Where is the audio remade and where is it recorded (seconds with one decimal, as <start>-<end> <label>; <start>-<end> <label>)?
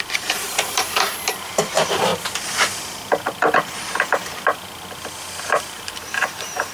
0.0-2.1 remade; 2.1-5.4 recorded; 5.4-6.7 remade